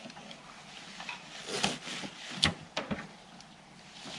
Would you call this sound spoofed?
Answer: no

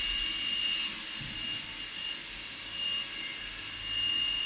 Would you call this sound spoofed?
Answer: no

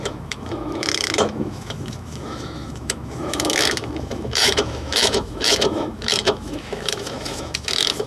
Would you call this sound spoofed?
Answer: yes